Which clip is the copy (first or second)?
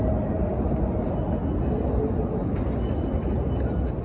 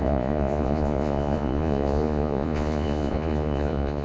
second